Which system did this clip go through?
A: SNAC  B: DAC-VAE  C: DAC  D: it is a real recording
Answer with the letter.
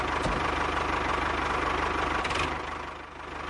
D